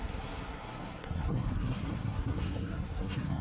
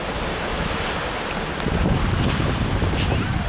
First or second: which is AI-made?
first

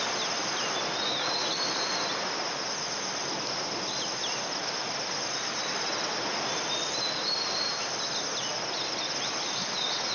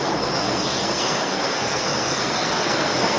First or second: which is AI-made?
second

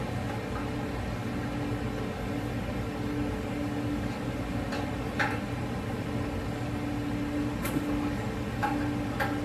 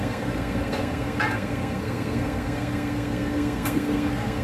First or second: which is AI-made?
second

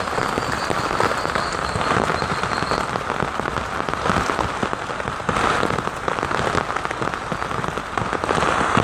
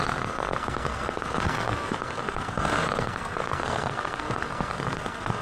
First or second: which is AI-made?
second